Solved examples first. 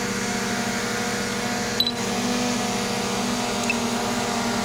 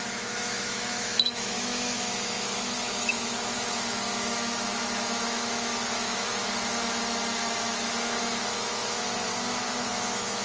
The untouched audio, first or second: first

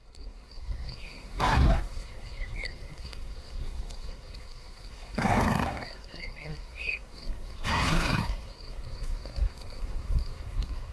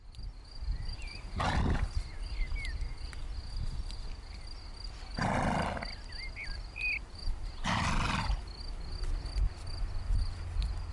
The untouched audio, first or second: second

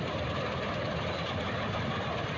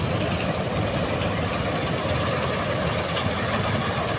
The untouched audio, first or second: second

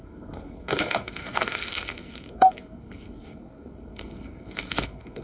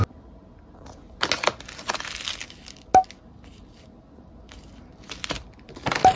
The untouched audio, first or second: second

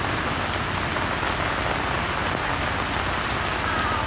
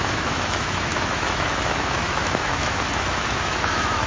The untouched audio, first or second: first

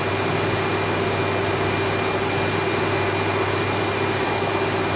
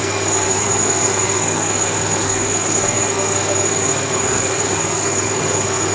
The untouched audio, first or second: first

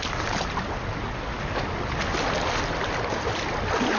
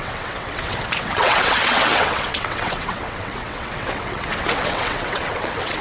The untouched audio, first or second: first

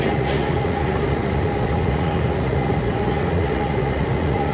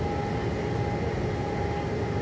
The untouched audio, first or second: second